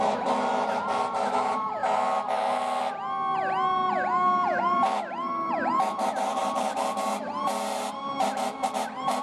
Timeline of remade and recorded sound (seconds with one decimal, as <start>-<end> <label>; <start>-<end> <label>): 0.0-1.8 remade; 1.8-4.6 recorded; 4.6-9.2 remade